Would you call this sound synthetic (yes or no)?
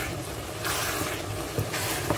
no